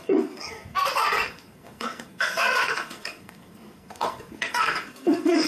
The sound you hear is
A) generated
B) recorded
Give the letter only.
A